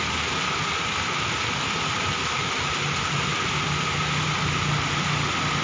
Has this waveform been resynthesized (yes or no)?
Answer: no